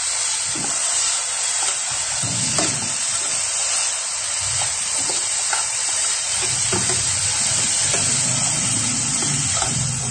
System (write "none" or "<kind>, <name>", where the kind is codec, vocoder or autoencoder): none